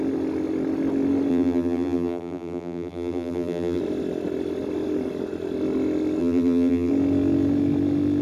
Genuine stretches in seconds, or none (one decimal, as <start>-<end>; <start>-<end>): 0.0-1.3; 3.8-6.2; 6.9-8.2